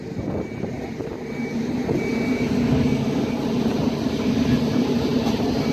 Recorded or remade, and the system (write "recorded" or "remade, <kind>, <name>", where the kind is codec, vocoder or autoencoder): recorded